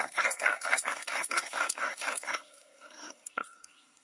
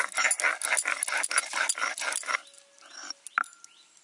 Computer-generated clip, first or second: first